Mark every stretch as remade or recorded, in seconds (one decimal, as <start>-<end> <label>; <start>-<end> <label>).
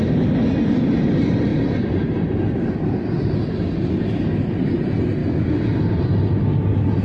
0.0-7.0 recorded